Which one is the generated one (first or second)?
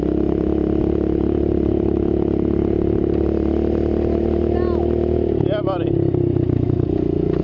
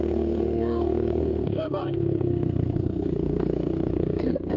second